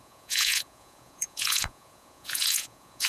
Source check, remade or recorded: remade